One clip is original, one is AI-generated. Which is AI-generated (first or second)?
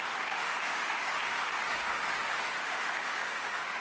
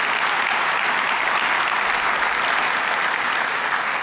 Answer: first